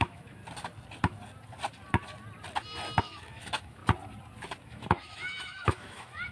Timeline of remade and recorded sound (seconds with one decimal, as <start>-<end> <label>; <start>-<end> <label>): 0.0-0.4 remade; 0.4-3.0 recorded; 3.0-3.8 remade; 3.8-4.6 recorded; 4.6-6.3 remade